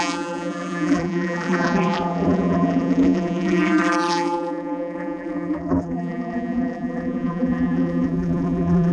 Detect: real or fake fake